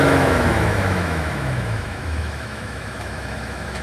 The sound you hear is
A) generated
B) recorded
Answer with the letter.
A